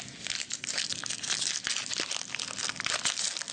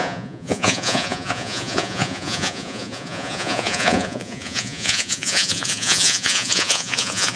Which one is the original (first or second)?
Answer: first